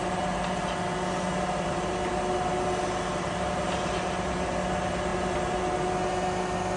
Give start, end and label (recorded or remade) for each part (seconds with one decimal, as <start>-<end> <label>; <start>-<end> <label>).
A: 0.0-6.8 recorded